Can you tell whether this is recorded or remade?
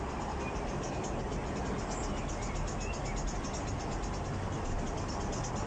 recorded